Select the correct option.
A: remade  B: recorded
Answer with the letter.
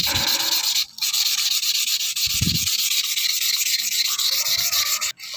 B